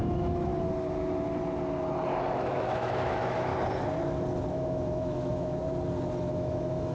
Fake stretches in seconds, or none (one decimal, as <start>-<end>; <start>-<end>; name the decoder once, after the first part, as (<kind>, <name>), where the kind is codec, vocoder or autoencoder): 0.0-0.5 (autoencoder, DAC-VAE); 2.3-3.5; 4.5-5.6; 6.2-6.9